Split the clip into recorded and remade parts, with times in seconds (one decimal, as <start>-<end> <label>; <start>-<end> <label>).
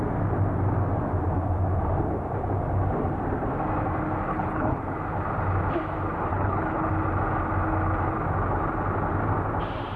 0.0-4.3 recorded; 4.3-4.8 remade; 4.8-6.3 recorded; 6.3-6.9 remade; 6.9-10.0 recorded